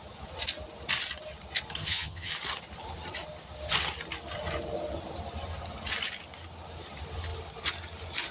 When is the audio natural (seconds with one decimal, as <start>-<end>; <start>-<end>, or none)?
0.0-1.8; 2.3-8.3